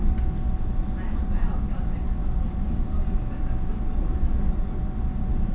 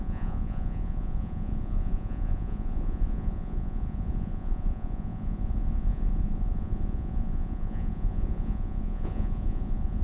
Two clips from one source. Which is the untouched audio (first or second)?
first